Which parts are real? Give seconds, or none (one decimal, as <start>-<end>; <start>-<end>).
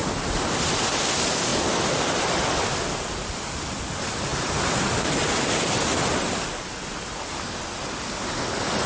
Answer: 0.0-8.9